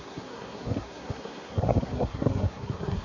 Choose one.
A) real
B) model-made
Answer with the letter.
B